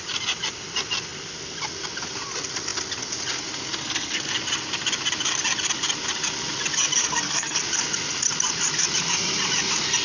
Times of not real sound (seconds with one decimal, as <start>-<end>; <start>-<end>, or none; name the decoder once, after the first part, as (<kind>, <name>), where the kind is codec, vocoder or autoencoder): 3.8-4.4 (codec, SNAC); 7.0-7.6